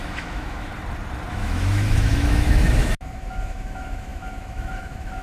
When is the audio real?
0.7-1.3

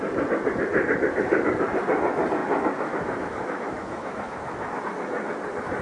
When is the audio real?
0.0-2.4; 4.8-5.8